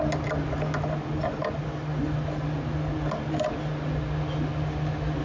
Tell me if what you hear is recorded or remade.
recorded